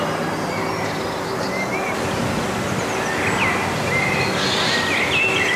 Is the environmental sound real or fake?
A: real